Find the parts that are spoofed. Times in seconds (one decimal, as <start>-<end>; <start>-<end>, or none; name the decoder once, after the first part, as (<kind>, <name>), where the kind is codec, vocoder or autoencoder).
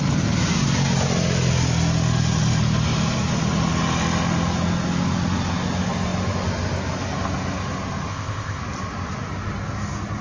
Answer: 8.1-8.6 (codec, ZipCodec)